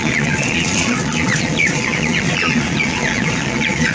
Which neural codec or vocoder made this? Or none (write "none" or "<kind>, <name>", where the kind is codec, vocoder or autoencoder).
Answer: vocoder, Vocos